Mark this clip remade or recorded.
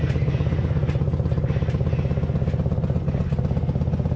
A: recorded